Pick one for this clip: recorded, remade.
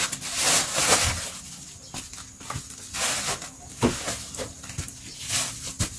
remade